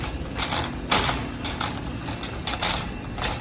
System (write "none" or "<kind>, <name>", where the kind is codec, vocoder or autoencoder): none